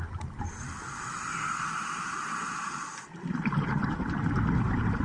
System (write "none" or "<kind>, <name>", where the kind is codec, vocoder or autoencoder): none